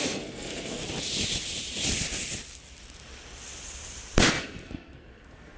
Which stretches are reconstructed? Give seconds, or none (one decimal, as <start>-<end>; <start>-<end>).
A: 0.0-0.8; 4.2-5.6